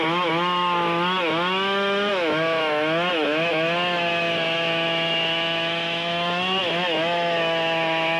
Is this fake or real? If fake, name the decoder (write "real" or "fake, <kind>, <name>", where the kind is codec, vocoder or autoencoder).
fake, autoencoder, DAC-VAE